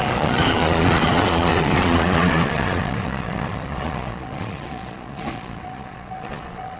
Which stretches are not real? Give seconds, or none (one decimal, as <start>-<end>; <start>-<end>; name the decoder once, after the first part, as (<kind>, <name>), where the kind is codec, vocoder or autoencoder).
0.0-6.8 (vocoder, Vocos)